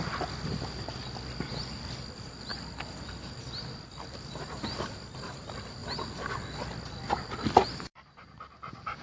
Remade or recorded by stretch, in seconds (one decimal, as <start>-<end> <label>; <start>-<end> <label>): 0.0-5.8 remade; 5.8-6.9 recorded; 6.9-9.0 remade